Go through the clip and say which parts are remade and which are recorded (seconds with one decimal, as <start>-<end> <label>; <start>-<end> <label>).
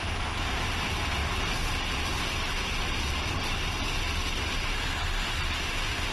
0.0-6.1 recorded